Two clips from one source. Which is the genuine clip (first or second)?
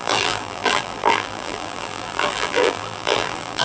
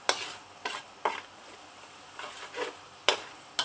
second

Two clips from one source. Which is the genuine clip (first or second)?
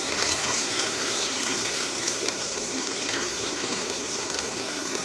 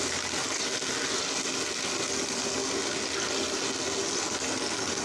second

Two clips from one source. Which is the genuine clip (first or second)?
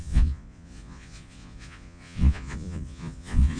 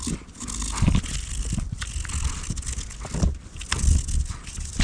second